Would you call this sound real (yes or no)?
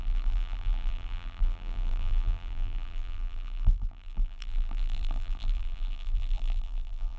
no